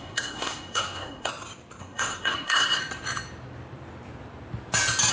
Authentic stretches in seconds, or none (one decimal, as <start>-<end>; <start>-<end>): 1.3-1.8; 2.8-5.1

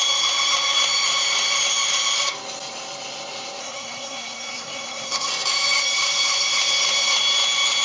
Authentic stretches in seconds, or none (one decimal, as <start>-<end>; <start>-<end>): 0.0-3.6; 5.3-7.8

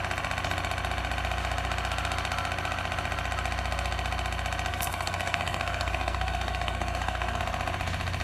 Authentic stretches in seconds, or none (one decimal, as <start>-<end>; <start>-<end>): 0.0-4.7; 7.4-8.2

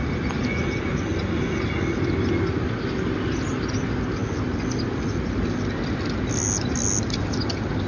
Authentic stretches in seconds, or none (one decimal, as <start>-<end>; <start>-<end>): 0.0-7.9

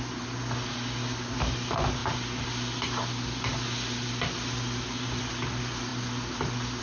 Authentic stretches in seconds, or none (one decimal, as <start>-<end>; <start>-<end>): 0.0-6.8